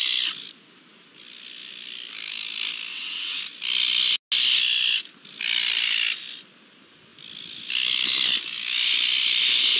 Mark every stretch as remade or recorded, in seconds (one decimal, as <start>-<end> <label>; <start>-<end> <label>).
0.0-2.9 recorded; 2.9-3.4 remade; 3.4-9.8 recorded